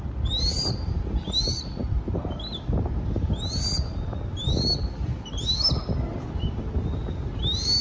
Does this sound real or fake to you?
real